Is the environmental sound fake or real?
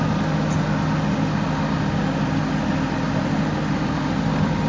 real